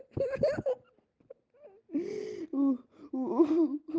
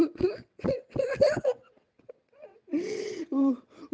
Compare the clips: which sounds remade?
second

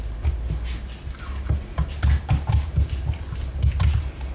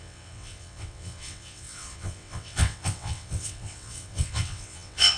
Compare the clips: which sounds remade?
second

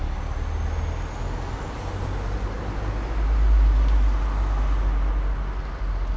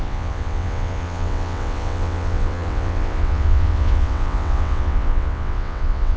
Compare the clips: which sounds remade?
second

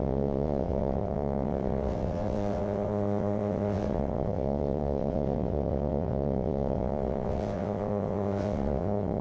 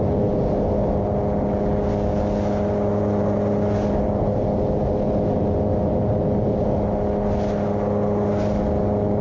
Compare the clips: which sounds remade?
first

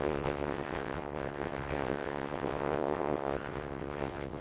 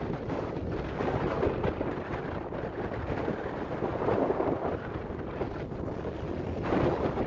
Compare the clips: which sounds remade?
first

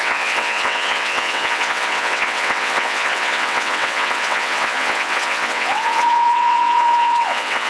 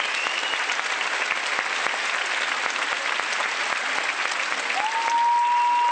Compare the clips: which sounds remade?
first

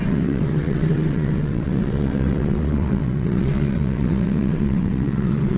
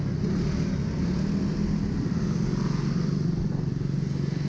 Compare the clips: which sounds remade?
first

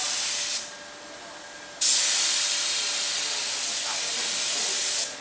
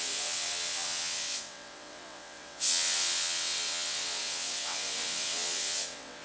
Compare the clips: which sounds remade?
second